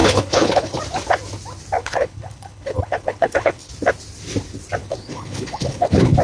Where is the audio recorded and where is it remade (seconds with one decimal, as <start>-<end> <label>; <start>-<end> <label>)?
0.0-0.8 remade; 0.8-1.8 recorded; 1.8-3.7 remade; 3.7-4.8 recorded; 4.8-6.2 remade